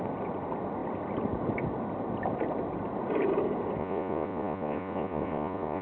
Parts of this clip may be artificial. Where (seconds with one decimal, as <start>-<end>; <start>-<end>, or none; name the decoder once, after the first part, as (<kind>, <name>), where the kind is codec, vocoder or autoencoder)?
3.8-5.8 (vocoder, Vocos)